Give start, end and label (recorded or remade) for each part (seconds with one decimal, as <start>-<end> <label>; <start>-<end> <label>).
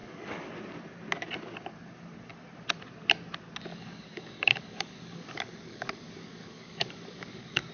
0.0-0.5 remade; 0.5-3.7 recorded; 3.7-7.7 remade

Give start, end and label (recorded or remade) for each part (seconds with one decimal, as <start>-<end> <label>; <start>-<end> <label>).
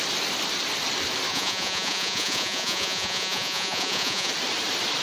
0.0-1.3 recorded; 1.3-4.3 remade; 4.3-5.0 recorded